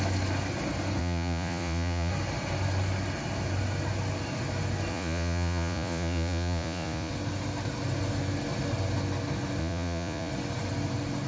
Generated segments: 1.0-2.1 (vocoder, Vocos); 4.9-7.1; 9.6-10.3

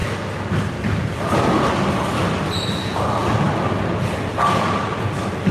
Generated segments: none